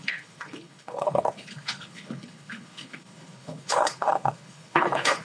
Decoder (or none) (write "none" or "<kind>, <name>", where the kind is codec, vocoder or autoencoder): codec, HILCodec